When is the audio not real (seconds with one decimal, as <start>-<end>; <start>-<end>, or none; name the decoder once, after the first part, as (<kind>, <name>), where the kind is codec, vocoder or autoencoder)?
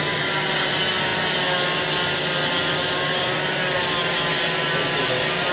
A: none